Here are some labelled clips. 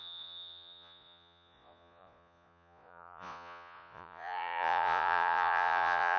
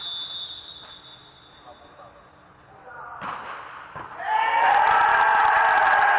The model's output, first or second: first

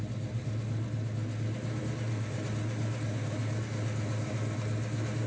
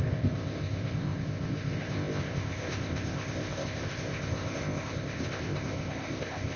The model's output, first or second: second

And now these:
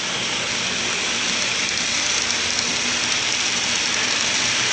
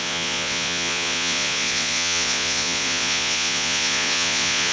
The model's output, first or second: second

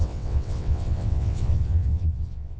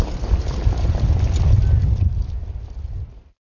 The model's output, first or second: first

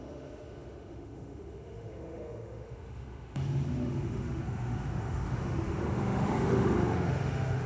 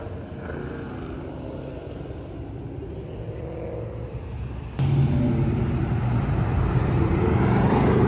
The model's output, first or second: first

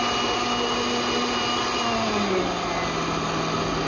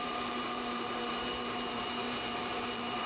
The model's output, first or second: second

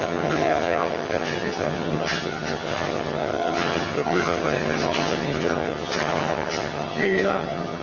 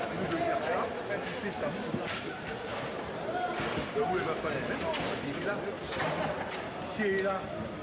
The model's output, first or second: first